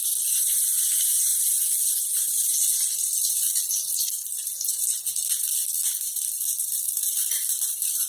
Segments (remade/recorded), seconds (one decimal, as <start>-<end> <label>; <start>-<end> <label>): 0.0-8.1 remade